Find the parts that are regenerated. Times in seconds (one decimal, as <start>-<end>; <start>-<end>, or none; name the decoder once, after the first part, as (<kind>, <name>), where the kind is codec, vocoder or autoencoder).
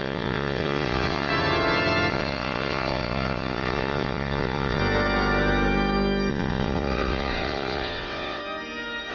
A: 0.0-1.3 (vocoder, WaveNeXt); 2.1-4.8; 6.3-8.4